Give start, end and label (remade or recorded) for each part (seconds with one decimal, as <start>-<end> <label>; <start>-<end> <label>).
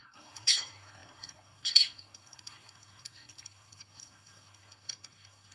0.0-5.5 remade